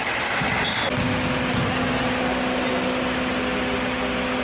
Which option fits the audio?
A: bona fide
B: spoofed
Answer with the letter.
A